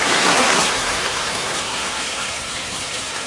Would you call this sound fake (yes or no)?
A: yes